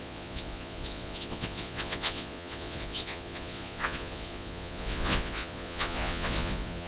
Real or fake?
fake